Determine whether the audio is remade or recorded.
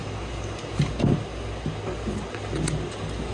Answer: recorded